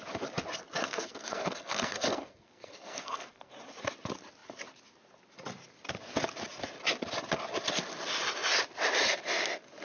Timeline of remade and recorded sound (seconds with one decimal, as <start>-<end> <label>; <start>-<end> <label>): 0.0-0.8 recorded; 0.8-3.5 remade; 3.5-9.8 recorded